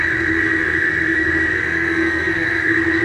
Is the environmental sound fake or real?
fake